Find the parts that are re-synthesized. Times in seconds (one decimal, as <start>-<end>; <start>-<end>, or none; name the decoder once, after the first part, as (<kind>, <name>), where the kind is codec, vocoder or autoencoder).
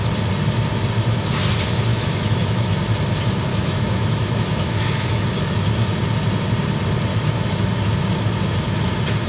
1.9-2.8 (autoencoder, DAC-VAE); 3.5-5.6; 7.1-7.7